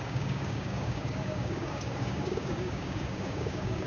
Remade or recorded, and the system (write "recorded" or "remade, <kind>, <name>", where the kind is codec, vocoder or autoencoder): remade, codec, DAC